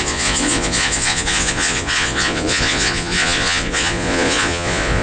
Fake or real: fake